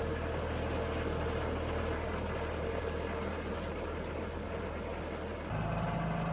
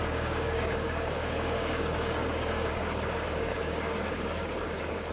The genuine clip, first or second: first